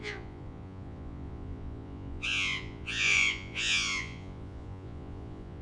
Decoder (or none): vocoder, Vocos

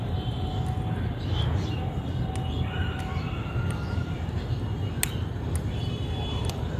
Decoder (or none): none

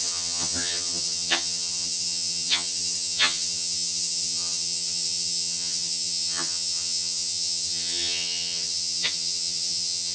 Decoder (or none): vocoder, HiFi-GAN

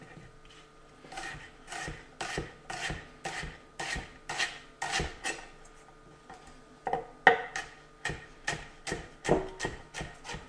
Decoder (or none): none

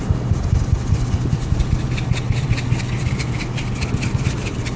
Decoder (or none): none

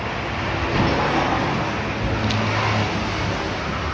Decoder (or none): none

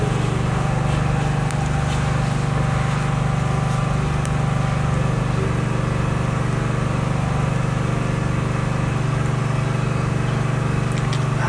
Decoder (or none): none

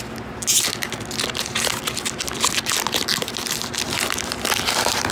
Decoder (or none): none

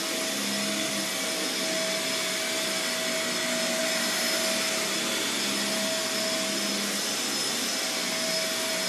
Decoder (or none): none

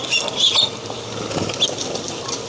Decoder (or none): none